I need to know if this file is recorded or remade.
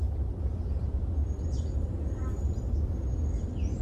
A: recorded